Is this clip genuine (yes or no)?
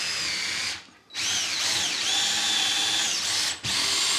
yes